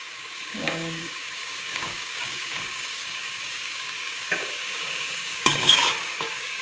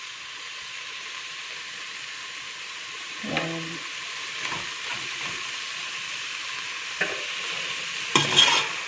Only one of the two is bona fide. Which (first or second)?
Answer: second